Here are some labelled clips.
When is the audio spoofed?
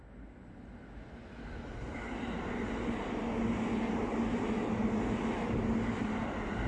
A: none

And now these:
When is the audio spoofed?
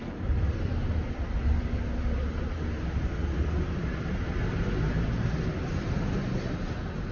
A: 0.0-1.8 (vocoder, BigVGAN v2); 3.2-4.0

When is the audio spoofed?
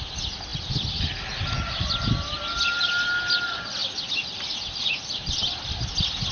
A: none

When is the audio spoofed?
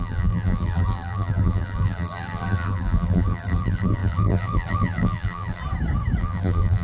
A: 0.0-5.6 (vocoder, BigVGAN v2); 6.2-6.8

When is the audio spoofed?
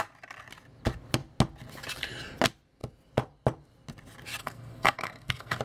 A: 4.4-5.6 (codec, SNAC)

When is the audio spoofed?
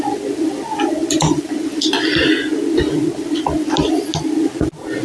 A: none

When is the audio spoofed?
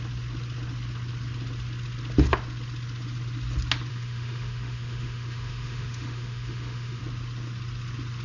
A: 3.9-7.0 (autoencoder, DAC-VAE)